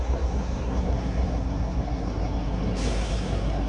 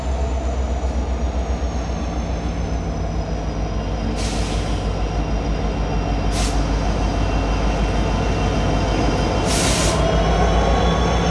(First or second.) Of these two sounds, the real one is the second